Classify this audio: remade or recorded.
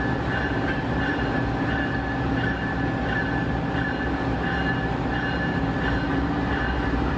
remade